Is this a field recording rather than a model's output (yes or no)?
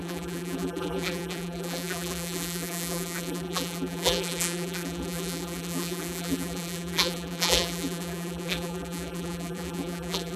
no